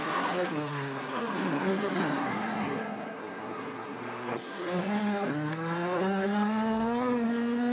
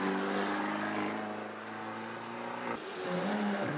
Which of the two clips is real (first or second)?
second